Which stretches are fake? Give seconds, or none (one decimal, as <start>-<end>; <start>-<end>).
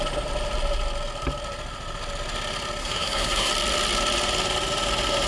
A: 2.8-3.5